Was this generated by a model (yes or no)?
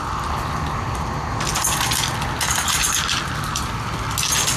no